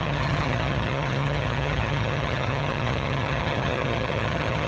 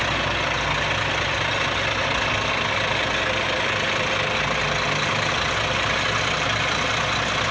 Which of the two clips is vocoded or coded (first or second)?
first